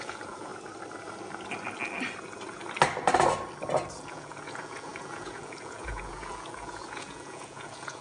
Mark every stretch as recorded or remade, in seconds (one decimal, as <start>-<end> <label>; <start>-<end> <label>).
0.0-0.5 remade; 0.5-4.1 recorded; 4.1-8.0 remade

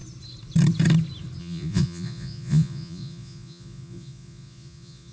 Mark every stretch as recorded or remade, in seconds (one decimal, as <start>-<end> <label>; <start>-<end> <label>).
0.0-1.4 recorded; 1.4-5.1 remade